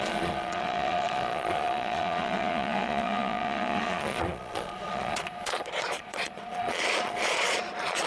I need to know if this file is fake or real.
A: fake